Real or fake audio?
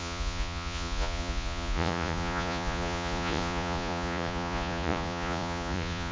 fake